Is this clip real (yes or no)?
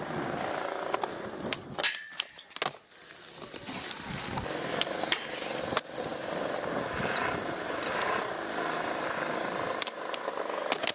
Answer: yes